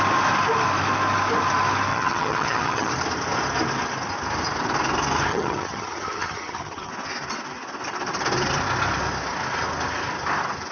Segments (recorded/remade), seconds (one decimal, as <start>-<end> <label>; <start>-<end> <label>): 0.0-1.9 recorded; 1.9-2.9 remade; 2.9-5.3 recorded; 5.3-6.9 remade; 6.9-10.7 recorded